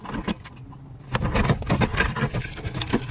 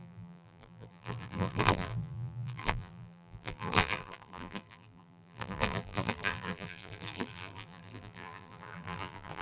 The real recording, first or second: first